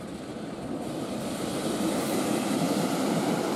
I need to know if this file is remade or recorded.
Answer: remade